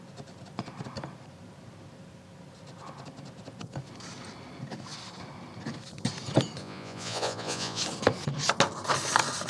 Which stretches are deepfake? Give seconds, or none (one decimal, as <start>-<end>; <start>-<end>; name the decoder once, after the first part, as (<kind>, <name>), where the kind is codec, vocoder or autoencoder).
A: 6.6-7.8 (vocoder, Vocos)